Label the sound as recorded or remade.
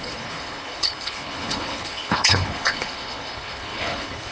remade